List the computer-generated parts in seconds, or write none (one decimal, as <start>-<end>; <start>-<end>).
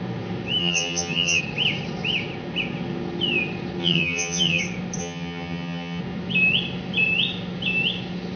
0.6-1.4; 3.8-4.6; 5.0-6.0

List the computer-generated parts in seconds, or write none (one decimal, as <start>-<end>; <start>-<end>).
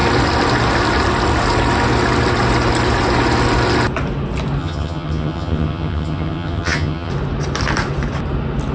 4.6-7.1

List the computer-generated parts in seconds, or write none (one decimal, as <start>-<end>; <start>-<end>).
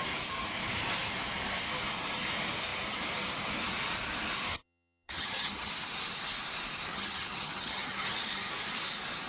4.5-5.7; 6.9-8.5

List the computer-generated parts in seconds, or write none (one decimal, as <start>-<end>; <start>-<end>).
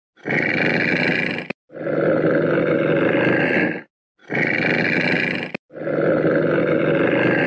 none